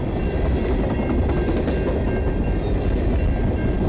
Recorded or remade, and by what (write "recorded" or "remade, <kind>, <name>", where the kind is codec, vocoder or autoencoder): recorded